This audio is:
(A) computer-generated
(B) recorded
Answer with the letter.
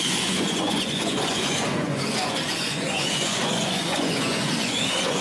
A